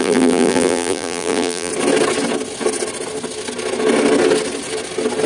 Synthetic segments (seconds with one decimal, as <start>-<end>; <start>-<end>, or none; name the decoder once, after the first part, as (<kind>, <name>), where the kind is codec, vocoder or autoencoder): 0.0-1.7 (vocoder, BigVGAN v2)